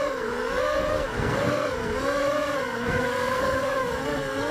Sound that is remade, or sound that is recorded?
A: remade